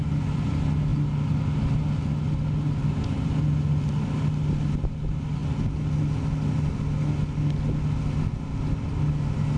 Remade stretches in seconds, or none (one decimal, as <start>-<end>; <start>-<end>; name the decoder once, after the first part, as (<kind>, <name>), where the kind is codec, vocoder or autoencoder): none